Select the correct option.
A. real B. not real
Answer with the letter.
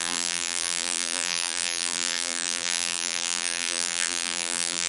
B